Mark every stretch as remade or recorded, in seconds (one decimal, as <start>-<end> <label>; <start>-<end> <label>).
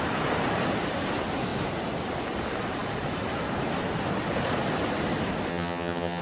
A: 0.0-5.5 recorded; 5.5-6.2 remade